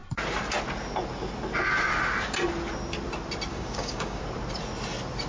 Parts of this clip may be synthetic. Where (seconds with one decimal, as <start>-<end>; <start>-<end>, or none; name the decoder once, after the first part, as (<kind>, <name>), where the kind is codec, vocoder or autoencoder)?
3.5-4.2 (codec, DAC)